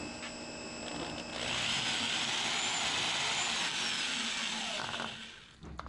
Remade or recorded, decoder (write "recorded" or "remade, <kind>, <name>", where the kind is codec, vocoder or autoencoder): recorded